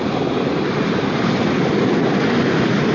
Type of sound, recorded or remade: recorded